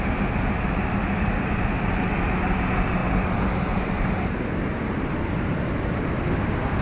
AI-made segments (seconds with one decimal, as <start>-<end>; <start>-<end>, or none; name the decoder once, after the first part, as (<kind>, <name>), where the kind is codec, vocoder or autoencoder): 3.0-5.6 (vocoder, BigVGAN v2)